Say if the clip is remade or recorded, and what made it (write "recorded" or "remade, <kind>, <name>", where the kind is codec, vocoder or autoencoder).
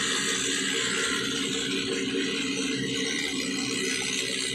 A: recorded